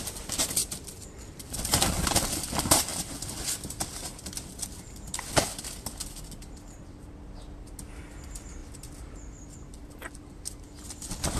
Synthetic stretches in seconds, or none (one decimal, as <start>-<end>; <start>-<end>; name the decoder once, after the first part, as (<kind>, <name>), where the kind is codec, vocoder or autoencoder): 0.6-2.4 (vocoder, BigVGAN v2)